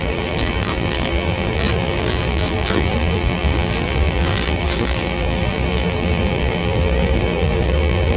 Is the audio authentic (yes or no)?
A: no